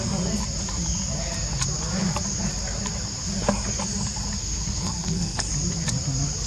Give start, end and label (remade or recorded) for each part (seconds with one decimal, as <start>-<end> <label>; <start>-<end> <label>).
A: 0.0-4.4 recorded; 4.4-5.5 remade; 5.5-6.5 recorded